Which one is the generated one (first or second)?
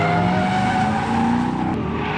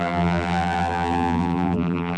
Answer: second